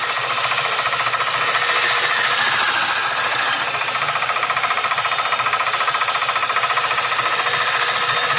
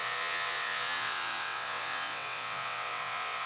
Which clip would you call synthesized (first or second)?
second